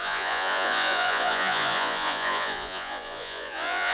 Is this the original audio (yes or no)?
no